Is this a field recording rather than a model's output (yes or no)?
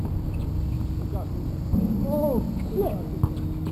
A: yes